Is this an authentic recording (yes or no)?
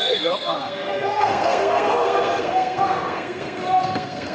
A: no